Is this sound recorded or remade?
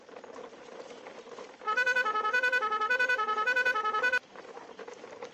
recorded